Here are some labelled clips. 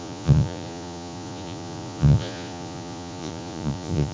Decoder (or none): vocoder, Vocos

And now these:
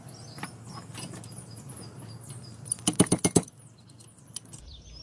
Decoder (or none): none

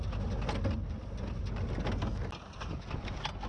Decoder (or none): none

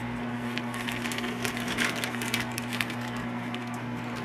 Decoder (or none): codec, SNAC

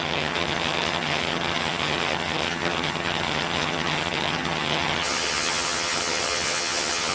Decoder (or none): vocoder, HiFi-GAN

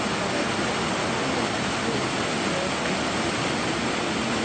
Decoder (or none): none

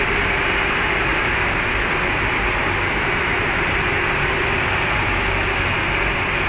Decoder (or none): none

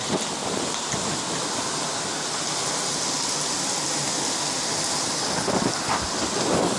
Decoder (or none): none